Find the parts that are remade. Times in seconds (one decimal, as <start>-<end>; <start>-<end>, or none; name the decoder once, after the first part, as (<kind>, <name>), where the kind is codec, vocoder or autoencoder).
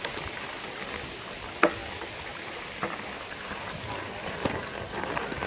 none